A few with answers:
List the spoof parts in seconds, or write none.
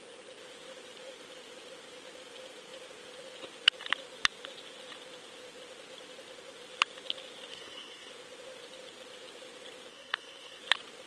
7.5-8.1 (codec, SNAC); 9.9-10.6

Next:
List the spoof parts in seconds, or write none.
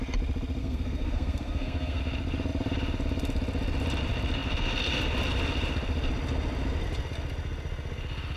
0.6-2.0 (codec, SNAC)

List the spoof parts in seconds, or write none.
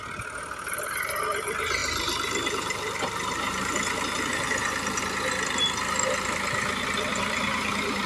1.8-5.0 (vocoder, BigVGAN v2); 7.1-8.1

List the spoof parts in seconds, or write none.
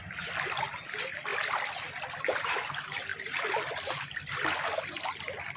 3.1-4.8 (vocoder, BigVGAN v2)